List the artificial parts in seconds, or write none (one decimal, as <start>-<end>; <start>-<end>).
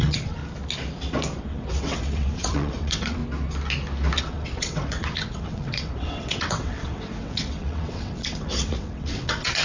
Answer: 0.0-0.4; 1.4-3.2; 4.2-9.6